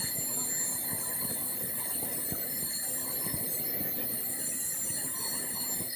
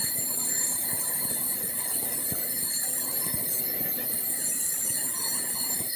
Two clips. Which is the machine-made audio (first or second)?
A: second